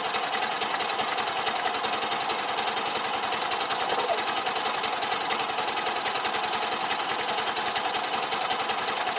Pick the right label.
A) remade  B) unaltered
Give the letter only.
B